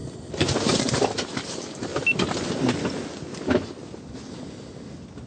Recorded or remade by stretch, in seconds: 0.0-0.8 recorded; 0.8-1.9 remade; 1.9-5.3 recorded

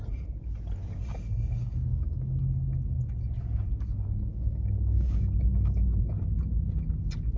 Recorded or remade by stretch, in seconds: 0.0-1.9 recorded; 1.9-2.4 remade; 2.4-4.3 recorded; 4.3-6.1 remade; 6.1-7.4 recorded

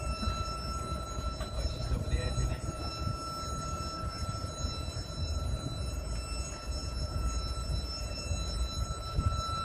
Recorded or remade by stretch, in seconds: 0.0-2.9 remade; 2.9-3.5 recorded; 3.5-9.6 remade